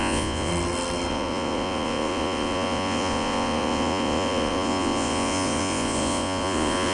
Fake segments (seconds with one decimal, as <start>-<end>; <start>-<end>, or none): 0.0-0.5; 1.1-6.9